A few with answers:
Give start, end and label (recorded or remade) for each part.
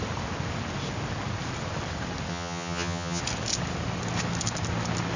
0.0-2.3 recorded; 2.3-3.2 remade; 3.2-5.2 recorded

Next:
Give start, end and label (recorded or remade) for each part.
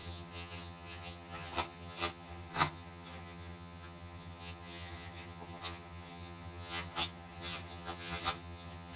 0.0-9.0 remade